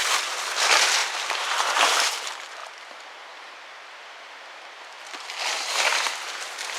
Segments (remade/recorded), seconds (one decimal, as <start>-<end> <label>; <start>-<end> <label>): 0.0-1.0 recorded; 1.0-2.1 remade; 2.1-6.8 recorded